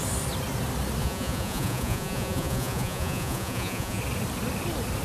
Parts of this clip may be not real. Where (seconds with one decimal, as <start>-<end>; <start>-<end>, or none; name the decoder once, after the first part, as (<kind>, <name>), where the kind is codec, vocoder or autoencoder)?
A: 1.0-4.0 (vocoder, Vocos)